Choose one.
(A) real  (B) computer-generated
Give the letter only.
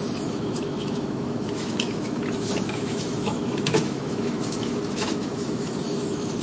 B